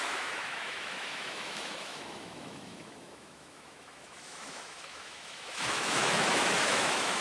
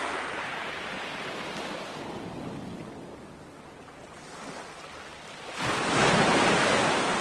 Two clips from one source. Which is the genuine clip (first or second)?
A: second